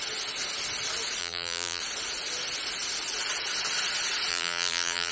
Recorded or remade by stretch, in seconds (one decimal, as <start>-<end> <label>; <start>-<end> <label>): 0.0-1.2 recorded; 1.2-1.8 remade; 1.8-4.3 recorded; 4.3-5.1 remade